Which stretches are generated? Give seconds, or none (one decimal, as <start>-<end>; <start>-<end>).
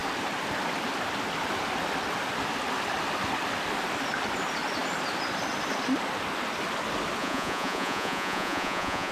7.2-9.1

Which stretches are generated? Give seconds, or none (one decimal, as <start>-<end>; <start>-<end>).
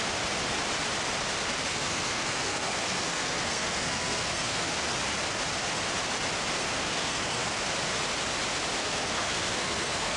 1.7-4.7; 6.6-7.5; 8.8-10.2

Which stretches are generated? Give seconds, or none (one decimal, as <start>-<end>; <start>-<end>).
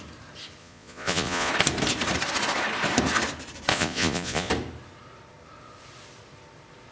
0.6-1.5; 3.7-4.5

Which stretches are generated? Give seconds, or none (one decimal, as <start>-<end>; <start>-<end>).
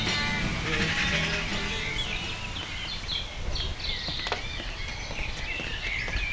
none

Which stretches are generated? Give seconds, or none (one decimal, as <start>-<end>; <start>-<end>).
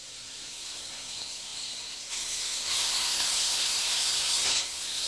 0.0-5.1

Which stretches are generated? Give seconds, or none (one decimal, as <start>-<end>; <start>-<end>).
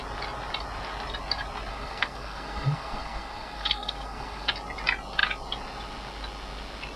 1.7-4.5